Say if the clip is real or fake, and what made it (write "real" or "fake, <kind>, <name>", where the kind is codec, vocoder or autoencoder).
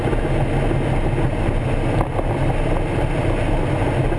real